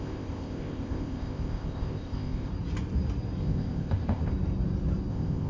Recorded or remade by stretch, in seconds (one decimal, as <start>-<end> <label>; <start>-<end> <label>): 0.0-2.5 remade; 2.5-3.4 recorded; 3.4-4.3 remade; 4.3-5.1 recorded; 5.1-5.5 remade